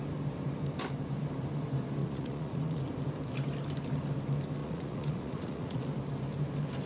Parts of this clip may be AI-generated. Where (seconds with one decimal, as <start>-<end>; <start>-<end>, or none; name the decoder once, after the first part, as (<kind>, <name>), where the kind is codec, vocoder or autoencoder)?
2.0-2.8 (vocoder, Vocos); 4.6-5.8